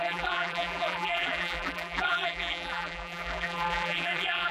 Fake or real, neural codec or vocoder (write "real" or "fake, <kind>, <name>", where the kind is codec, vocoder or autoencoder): fake, vocoder, BigVGAN v2